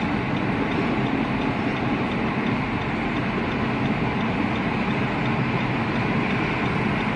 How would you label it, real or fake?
real